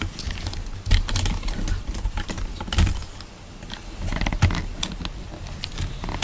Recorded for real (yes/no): yes